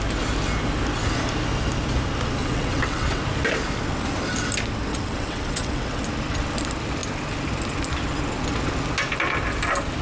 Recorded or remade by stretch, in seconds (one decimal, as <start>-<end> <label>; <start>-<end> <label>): 0.0-2.4 recorded; 2.4-3.2 remade; 3.2-4.9 recorded; 4.9-6.0 remade; 6.0-10.0 recorded